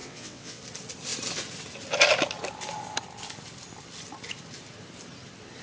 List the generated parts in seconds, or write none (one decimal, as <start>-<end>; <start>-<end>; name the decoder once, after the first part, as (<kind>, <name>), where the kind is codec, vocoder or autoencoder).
0.0-0.6 (vocoder, WaveNeXt)